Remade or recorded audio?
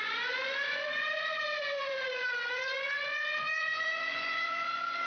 remade